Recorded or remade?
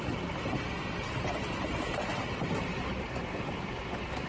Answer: recorded